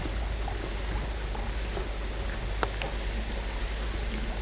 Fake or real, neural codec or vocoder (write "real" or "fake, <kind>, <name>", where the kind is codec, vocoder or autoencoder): real